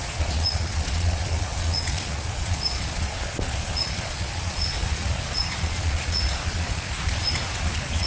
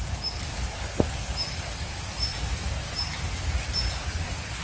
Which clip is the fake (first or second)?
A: first